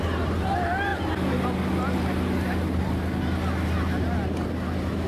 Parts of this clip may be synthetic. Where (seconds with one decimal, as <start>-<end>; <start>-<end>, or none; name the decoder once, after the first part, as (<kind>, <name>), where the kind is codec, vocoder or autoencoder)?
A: none